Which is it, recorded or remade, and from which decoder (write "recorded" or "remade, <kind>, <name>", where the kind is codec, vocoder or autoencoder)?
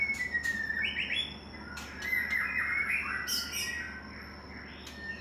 recorded